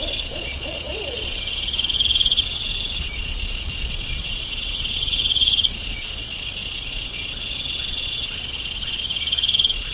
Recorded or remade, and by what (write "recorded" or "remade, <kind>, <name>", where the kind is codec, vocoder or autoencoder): remade, vocoder, Vocos